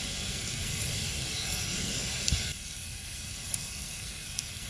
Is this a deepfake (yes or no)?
yes